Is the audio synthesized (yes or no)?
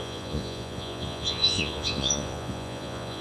yes